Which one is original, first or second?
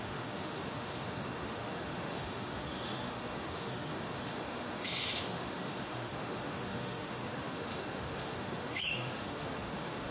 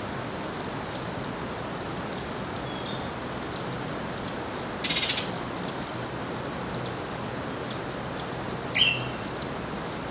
second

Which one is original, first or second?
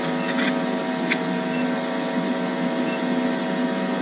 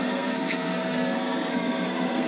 first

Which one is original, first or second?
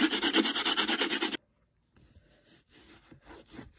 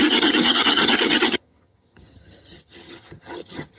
first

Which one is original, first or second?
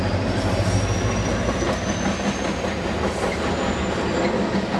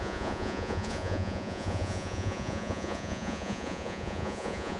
first